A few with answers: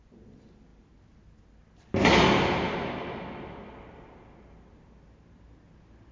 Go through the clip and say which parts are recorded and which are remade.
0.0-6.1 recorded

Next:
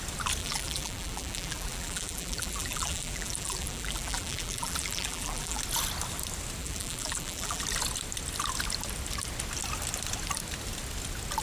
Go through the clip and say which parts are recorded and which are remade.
0.0-0.4 recorded; 0.4-5.6 remade; 5.6-6.6 recorded; 6.6-7.6 remade; 7.6-11.4 recorded

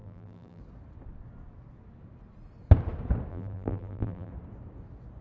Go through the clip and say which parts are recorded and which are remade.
0.0-0.6 remade; 0.6-3.3 recorded; 3.3-4.3 remade; 4.3-5.2 recorded

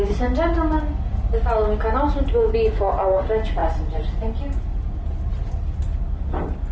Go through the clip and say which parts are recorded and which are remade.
0.0-6.7 recorded